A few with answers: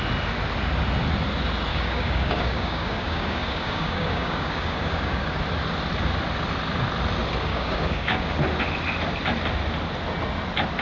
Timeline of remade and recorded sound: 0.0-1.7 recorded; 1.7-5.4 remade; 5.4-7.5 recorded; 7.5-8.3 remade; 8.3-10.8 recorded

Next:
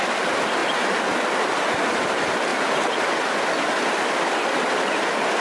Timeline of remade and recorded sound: 0.0-5.4 recorded

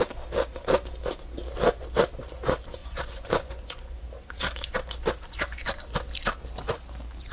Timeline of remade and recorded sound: 0.0-2.8 recorded; 2.8-4.0 remade; 4.0-7.3 recorded

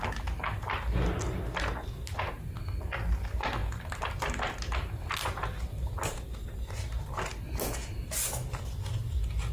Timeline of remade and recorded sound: 0.0-9.5 recorded

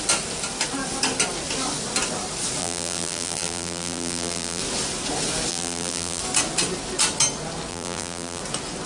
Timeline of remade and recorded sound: 0.0-2.6 recorded; 2.6-4.6 remade; 4.6-5.5 recorded; 5.5-6.2 remade; 6.2-7.7 recorded; 7.7-8.4 remade; 8.4-8.9 recorded

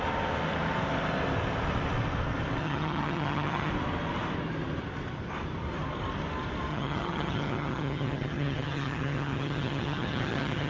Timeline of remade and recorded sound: 0.0-2.6 recorded; 2.6-3.7 remade; 3.7-6.7 recorded; 6.7-10.7 remade

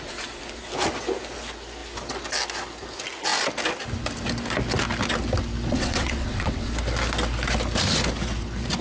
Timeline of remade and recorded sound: 0.0-5.7 recorded; 5.7-6.7 remade; 6.7-8.8 recorded

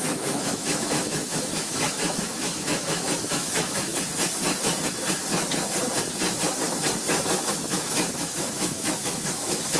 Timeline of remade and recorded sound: 0.0-3.9 remade; 3.9-7.3 recorded; 7.3-9.8 remade